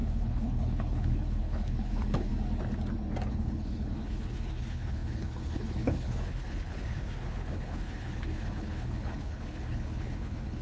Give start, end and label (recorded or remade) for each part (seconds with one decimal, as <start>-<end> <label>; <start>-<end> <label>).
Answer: 0.0-2.3 remade; 2.3-3.3 recorded; 3.3-10.6 remade